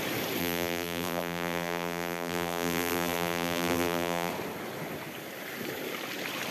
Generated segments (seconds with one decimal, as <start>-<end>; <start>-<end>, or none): 0.4-4.3